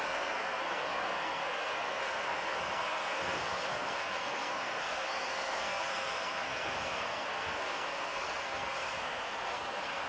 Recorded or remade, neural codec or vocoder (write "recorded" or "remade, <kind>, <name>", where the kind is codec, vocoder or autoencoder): remade, codec, SNAC